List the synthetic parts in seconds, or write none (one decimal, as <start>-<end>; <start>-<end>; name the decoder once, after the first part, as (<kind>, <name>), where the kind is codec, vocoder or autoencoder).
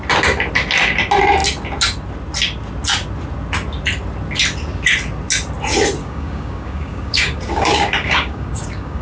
6.0-9.0 (codec, DAC)